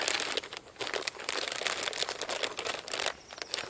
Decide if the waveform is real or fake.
real